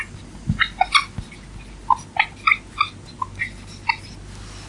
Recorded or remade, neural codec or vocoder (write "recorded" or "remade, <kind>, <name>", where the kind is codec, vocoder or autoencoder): recorded